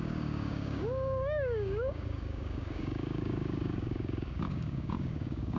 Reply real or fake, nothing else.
fake